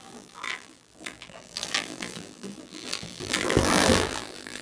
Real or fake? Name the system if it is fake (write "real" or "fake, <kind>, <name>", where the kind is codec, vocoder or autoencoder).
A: fake, vocoder, BigVGAN v2